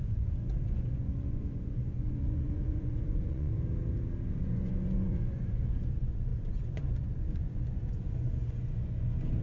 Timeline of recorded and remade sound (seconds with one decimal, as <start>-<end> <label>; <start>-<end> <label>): 0.0-3.5 remade; 3.5-4.3 recorded; 4.3-9.4 remade

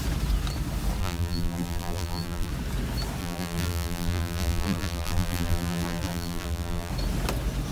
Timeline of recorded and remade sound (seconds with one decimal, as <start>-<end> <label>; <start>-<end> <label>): 0.0-1.0 recorded; 1.0-2.5 remade; 2.5-3.2 recorded; 3.2-6.9 remade; 6.9-7.7 recorded

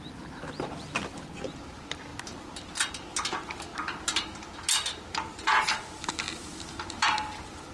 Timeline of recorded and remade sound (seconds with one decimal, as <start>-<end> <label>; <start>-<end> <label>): 0.0-7.7 recorded